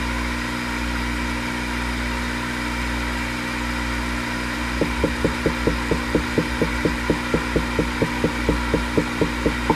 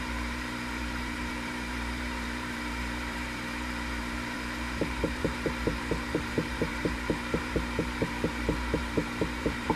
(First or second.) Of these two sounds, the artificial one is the second